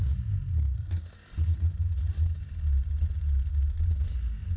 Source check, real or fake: real